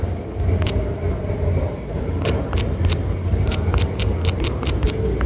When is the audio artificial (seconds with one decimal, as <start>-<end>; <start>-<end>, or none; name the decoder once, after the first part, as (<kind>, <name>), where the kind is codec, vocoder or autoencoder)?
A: 0.0-5.3 (vocoder, BigVGAN v2)